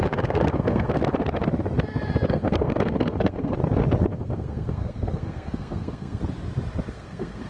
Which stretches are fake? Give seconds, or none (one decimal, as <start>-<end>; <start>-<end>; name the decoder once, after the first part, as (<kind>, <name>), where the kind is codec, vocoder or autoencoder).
0.0-1.0 (codec, SNAC); 2.3-3.6; 4.1-6.2; 6.9-7.5